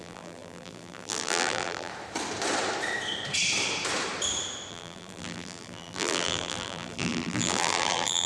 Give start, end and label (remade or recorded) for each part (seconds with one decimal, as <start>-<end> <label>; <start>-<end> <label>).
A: 0.0-1.9 remade; 1.9-4.7 recorded; 4.7-8.3 remade